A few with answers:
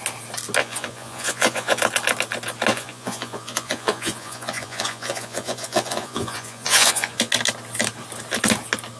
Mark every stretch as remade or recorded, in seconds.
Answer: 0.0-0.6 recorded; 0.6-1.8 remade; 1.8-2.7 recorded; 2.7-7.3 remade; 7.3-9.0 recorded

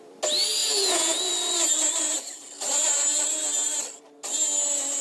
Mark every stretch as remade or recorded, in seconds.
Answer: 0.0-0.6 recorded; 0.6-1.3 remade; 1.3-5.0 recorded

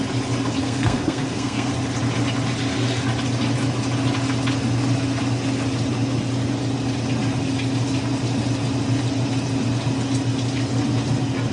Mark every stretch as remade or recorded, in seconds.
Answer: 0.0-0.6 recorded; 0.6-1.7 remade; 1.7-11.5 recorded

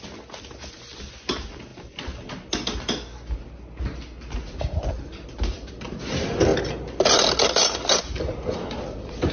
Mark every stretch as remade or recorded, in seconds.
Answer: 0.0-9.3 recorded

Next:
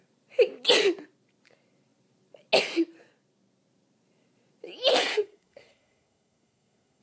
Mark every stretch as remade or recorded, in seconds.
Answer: 0.0-4.9 recorded; 4.9-7.0 remade